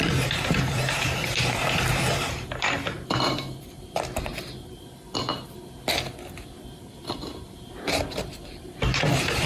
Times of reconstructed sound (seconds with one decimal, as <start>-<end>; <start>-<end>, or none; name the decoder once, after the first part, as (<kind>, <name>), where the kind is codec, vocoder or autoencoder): 0.0-4.3 (vocoder, BigVGAN v2); 6.8-9.5